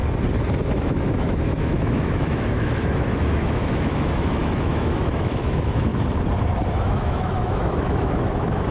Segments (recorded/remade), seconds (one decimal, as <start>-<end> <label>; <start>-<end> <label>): 0.0-0.7 recorded; 0.7-5.9 remade; 5.9-6.7 recorded; 6.7-8.7 remade